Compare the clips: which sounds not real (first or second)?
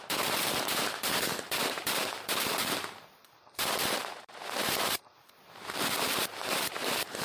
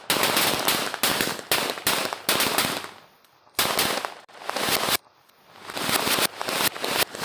first